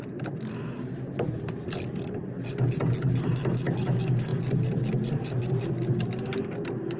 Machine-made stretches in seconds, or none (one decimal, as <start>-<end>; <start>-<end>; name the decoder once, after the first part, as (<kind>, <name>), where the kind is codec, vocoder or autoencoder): none